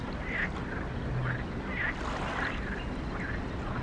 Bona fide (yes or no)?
yes